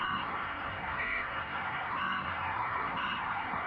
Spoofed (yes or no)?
yes